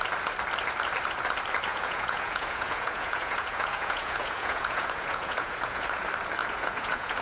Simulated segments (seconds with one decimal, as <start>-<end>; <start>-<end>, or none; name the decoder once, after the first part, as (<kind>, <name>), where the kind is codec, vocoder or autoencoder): 1.7-6.0 (vocoder, Vocos); 6.4-7.2